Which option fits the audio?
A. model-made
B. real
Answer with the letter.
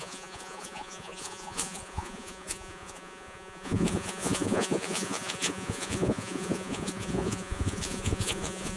A